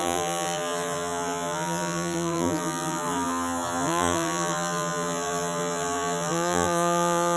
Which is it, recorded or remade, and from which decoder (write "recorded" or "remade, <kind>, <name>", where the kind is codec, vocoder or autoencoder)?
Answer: remade, vocoder, BigVGAN v2